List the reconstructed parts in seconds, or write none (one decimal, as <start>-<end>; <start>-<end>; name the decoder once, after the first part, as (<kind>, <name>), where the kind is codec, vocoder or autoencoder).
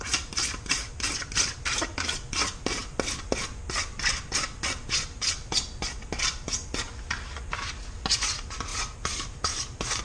none